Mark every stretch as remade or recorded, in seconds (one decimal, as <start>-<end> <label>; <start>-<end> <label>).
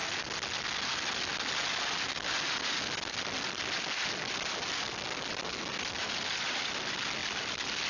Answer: 0.0-7.9 recorded